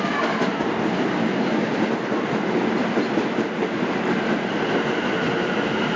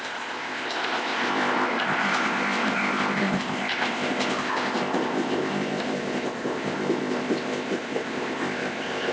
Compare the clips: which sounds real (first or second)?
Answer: first